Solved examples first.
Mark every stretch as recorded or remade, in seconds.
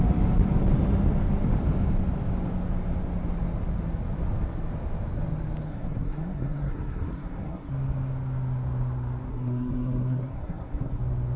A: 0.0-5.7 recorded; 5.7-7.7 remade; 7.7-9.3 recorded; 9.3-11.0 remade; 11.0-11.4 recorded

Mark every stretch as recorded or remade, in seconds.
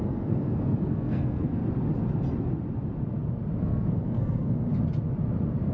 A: 0.0-1.6 remade; 1.6-3.6 recorded; 3.6-4.7 remade; 4.7-5.7 recorded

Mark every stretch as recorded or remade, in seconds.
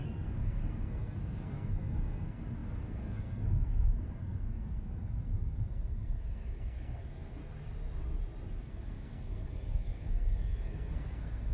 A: 0.0-7.4 remade; 7.4-8.6 recorded; 8.6-11.5 remade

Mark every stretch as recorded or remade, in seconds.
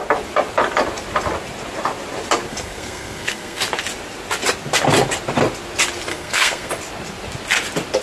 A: 0.0-2.5 recorded; 2.5-3.6 remade; 3.6-6.1 recorded; 6.1-6.7 remade; 6.7-8.0 recorded